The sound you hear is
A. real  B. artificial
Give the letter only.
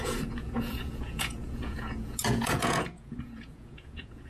B